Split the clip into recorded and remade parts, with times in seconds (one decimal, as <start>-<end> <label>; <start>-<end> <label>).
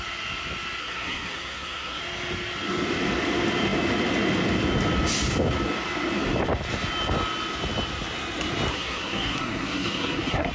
0.0-0.8 recorded; 0.8-2.0 remade; 2.0-8.7 recorded; 8.7-10.5 remade